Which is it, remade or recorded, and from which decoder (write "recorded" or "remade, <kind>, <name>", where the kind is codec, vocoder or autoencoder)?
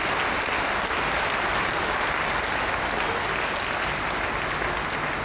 recorded